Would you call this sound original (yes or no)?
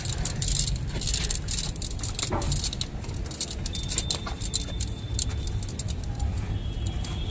yes